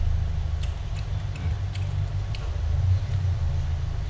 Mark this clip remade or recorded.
recorded